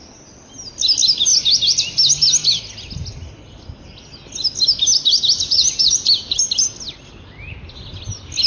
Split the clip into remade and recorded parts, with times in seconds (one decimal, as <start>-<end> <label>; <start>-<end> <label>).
0.0-8.5 recorded